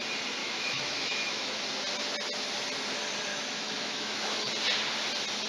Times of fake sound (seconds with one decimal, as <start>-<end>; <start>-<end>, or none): 0.4-1.6; 3.3-4.5